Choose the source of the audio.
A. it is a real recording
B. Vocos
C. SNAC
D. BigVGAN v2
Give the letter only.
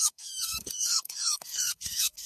C